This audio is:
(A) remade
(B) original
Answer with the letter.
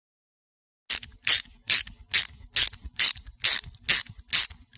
B